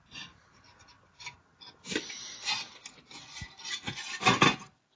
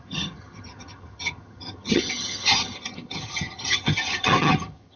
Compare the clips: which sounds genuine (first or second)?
first